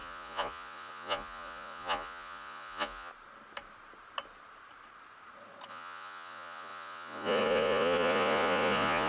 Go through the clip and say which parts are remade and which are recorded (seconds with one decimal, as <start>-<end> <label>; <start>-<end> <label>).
0.0-3.1 remade; 3.1-5.7 recorded; 5.7-9.1 remade